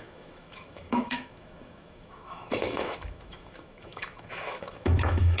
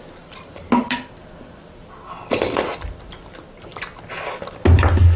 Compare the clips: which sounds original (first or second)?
second